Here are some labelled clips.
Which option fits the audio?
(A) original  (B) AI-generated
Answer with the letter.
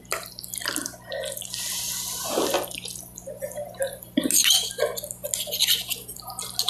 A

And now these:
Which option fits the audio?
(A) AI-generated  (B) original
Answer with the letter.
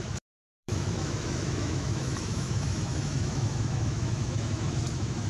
A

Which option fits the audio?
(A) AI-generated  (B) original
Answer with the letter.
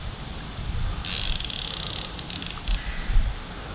B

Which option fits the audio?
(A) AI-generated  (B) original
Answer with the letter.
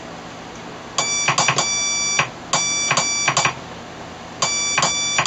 B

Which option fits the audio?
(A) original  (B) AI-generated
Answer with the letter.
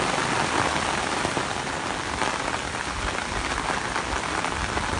A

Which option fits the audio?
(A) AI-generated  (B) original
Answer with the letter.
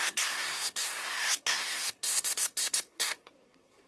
A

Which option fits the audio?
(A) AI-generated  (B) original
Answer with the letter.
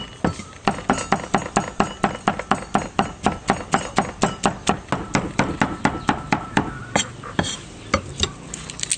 B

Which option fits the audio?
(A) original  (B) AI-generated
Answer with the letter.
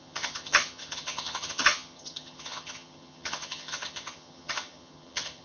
B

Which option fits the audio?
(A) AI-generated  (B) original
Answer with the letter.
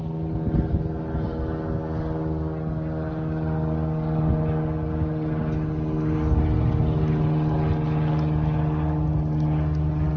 B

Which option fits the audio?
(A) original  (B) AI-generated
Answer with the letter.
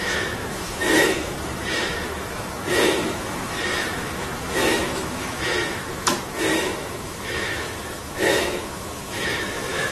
B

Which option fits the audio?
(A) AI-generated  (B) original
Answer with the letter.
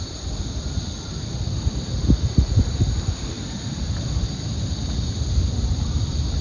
A